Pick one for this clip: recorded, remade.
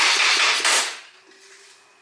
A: recorded